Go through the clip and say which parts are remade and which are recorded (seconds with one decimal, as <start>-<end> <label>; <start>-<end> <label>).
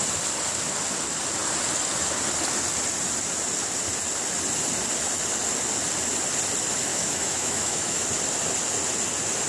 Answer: 0.0-6.9 recorded; 6.9-8.0 remade; 8.0-9.5 recorded